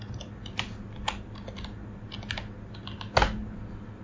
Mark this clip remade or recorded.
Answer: recorded